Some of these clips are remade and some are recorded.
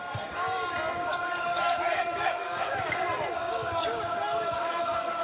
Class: remade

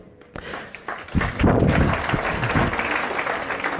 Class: recorded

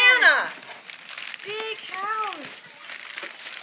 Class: recorded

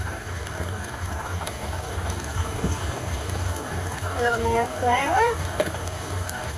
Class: remade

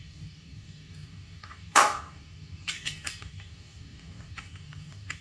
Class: remade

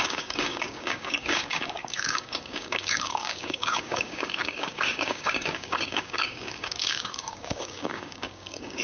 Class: remade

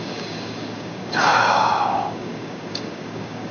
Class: remade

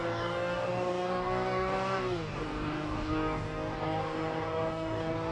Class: remade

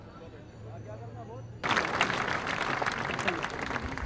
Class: recorded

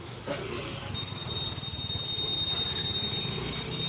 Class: recorded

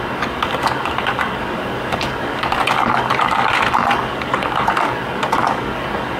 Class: remade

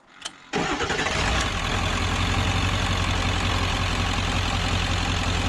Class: recorded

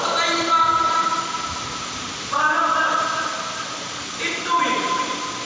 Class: recorded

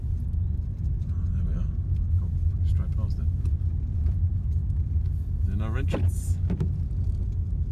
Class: recorded